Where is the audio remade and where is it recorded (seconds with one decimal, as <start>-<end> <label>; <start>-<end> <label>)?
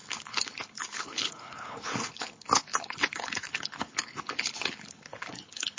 0.0-5.8 remade